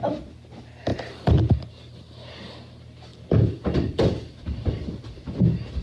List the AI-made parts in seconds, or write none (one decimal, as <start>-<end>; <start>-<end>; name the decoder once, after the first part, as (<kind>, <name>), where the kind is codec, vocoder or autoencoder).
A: 0.9-1.5 (vocoder, BigVGAN v2); 3.1-5.2

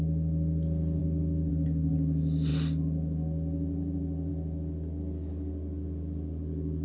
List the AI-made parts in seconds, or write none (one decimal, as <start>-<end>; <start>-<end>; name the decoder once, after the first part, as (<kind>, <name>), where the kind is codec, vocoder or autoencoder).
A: none

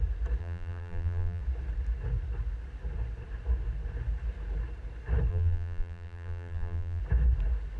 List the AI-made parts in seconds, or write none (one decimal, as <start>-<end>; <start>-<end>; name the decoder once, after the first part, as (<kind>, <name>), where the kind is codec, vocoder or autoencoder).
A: 0.4-1.4 (vocoder, BigVGAN v2); 5.3-7.0

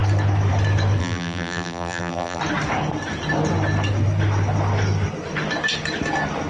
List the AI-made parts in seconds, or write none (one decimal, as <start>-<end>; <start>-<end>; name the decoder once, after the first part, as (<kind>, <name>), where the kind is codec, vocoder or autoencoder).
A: 1.0-2.4 (vocoder, BigVGAN v2)

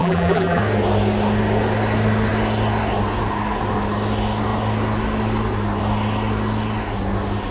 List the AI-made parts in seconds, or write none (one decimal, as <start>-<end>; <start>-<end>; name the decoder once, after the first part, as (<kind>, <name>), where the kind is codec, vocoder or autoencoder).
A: 0.0-0.6 (vocoder, BigVGAN v2)

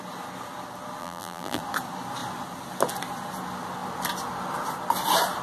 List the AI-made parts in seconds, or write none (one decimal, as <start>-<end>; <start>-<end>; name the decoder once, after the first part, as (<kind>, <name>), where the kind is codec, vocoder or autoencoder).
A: 1.0-1.6 (vocoder, BigVGAN v2)

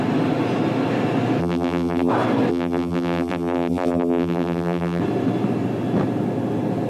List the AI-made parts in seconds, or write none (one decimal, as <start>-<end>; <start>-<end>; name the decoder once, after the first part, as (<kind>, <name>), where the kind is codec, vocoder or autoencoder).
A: 1.4-2.1 (vocoder, BigVGAN v2); 2.5-5.0